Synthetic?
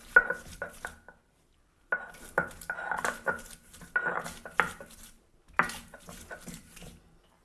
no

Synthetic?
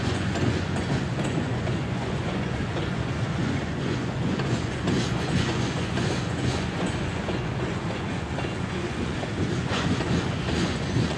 yes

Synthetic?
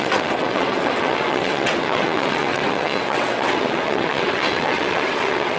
yes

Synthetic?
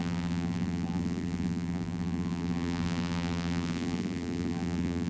yes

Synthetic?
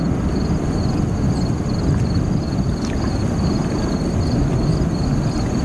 no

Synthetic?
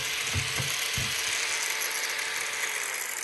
no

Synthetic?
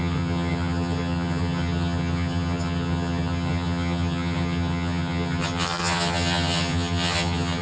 yes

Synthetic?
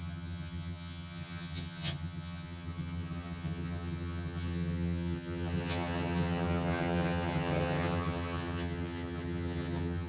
yes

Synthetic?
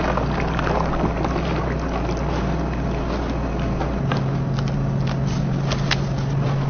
no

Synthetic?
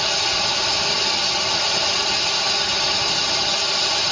no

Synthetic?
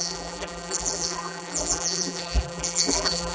yes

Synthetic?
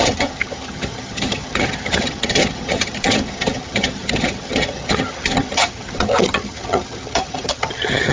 yes